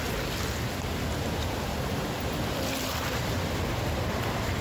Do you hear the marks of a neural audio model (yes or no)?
no